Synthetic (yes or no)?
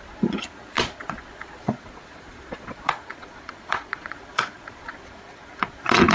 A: yes